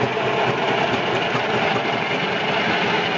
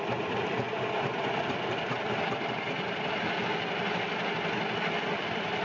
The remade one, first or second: second